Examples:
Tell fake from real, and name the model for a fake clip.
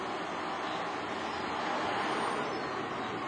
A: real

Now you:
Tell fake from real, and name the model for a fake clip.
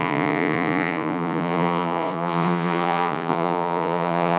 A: fake, vocoder, Vocos